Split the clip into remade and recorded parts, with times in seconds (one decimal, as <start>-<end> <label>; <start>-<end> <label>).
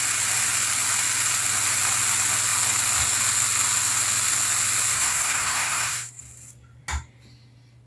0.0-4.9 recorded; 4.9-6.2 remade; 6.2-7.9 recorded